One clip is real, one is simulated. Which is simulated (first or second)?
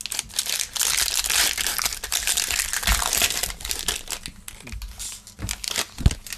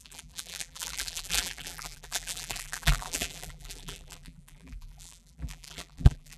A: second